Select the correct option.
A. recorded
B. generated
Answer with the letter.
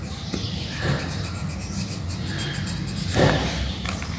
A